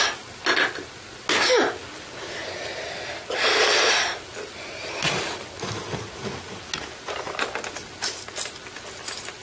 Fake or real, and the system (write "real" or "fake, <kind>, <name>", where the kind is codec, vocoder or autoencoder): real